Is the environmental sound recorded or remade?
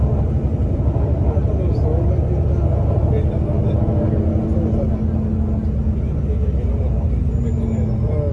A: recorded